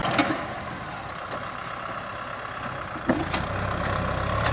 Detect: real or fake real